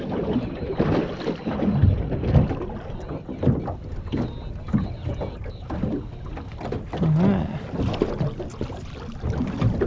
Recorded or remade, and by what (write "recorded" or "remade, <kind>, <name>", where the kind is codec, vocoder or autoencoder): recorded